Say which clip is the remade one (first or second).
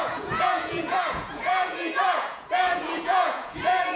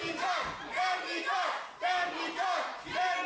first